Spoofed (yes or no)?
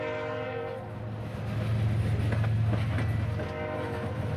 no